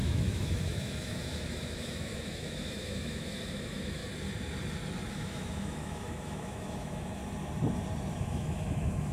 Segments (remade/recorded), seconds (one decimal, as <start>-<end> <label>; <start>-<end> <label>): 0.0-4.0 remade; 4.0-5.1 recorded; 5.1-7.2 remade; 7.2-8.2 recorded; 8.2-9.1 remade